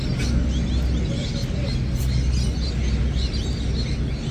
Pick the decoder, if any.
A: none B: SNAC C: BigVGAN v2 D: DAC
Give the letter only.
A